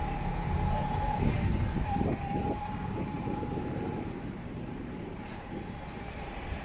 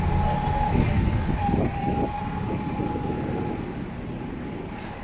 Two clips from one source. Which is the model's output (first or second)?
first